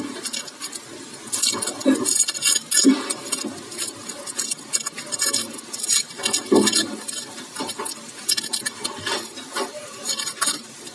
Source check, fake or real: real